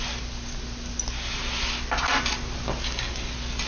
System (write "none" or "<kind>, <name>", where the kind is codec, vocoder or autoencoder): none